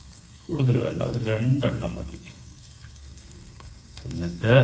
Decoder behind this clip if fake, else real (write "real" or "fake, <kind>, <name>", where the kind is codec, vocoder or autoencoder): fake, codec, SNAC